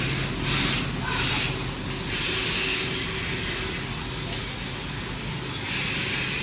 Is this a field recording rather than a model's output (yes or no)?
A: yes